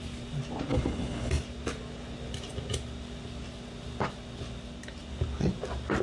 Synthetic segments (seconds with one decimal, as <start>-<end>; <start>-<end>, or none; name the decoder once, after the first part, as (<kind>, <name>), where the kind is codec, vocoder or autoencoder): 0.7-1.3 (codec, HILCodec)

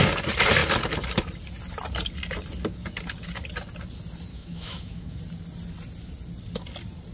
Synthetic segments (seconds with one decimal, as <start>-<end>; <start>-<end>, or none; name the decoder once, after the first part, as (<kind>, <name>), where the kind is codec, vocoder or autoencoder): 4.3-5.2 (autoencoder, DAC-VAE)

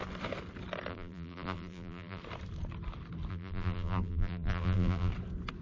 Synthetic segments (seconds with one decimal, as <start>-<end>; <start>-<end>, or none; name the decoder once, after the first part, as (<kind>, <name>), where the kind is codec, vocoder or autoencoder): 0.9-2.2 (vocoder, BigVGAN v2); 3.3-5.1